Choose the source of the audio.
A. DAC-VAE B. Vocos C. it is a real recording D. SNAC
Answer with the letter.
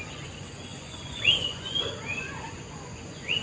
B